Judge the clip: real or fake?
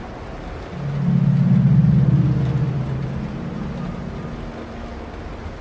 real